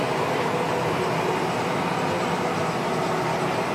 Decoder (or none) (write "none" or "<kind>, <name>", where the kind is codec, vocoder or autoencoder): none